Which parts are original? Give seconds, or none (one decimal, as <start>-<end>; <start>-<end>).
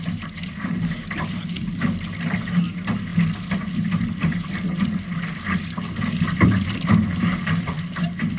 0.0-8.4